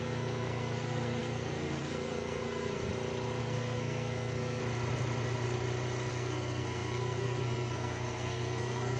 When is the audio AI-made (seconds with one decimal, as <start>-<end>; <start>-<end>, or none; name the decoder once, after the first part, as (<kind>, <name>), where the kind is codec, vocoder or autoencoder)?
0.0-2.9 (codec, SNAC); 3.4-4.6; 6.1-9.0